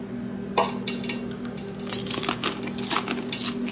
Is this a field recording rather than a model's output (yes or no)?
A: yes